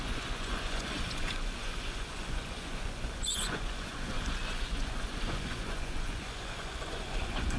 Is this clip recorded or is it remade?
remade